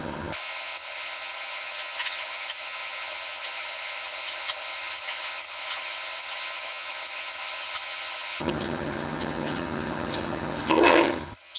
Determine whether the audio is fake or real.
fake